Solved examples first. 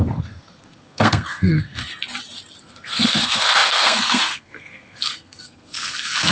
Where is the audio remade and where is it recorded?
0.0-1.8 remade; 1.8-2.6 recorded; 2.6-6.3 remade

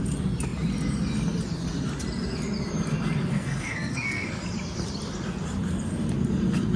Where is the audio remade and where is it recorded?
0.0-3.3 recorded; 3.3-4.3 remade; 4.3-6.8 recorded

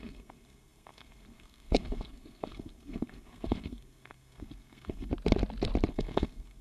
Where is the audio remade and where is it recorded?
0.0-5.1 remade; 5.1-5.9 recorded; 5.9-6.6 remade

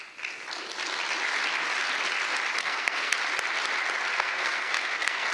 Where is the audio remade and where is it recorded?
0.0-2.6 recorded; 2.6-3.2 remade; 3.2-4.1 recorded; 4.1-5.3 remade

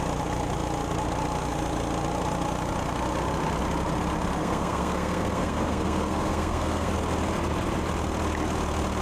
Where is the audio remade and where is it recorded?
0.0-4.4 recorded; 4.4-6.9 remade; 6.9-9.0 recorded